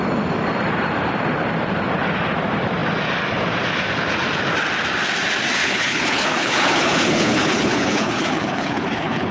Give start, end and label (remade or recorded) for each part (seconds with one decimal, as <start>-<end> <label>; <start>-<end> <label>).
0.0-5.6 recorded; 5.6-9.3 remade